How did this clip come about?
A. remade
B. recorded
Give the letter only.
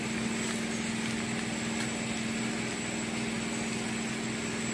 B